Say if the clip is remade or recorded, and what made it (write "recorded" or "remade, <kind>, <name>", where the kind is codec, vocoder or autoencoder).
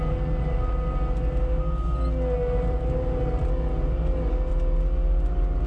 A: recorded